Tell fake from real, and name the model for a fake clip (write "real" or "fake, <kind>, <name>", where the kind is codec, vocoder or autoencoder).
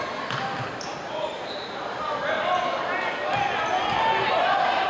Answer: real